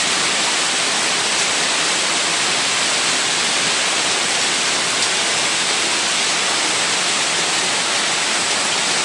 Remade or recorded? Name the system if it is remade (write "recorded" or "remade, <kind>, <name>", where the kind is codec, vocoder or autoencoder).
recorded